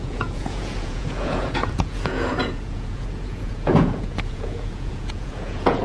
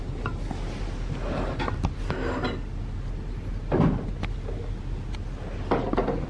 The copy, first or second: first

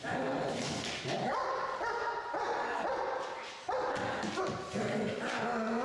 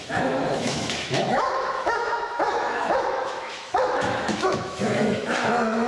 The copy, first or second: second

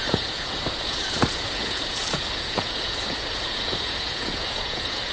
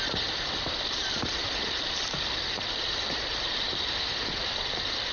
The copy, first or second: first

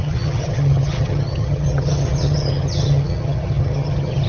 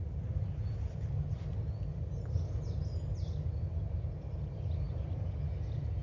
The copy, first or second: first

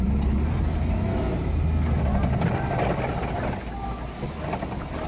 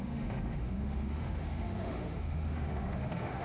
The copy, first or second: second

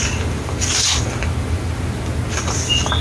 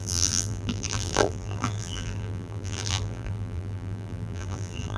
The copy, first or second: second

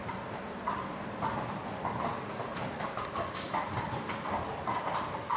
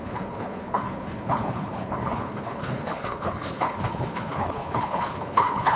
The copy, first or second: second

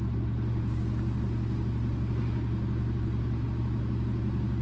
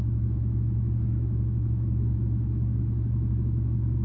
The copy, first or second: second